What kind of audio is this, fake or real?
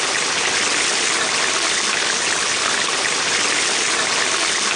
real